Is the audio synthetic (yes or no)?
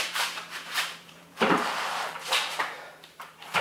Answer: yes